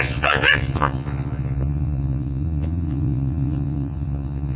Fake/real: fake